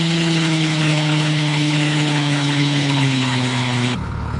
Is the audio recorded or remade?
remade